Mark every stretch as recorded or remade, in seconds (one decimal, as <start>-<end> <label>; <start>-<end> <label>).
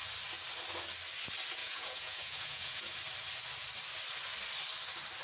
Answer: 0.0-1.6 recorded; 1.6-3.0 remade; 3.0-5.2 recorded